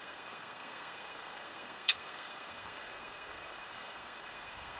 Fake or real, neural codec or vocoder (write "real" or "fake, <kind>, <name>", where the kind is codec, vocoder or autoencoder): fake, codec, SNAC